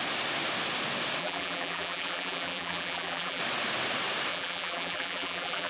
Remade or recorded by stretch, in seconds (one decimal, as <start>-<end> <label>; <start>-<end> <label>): 0.0-1.2 recorded; 1.2-3.4 remade; 3.4-4.3 recorded; 4.3-5.7 remade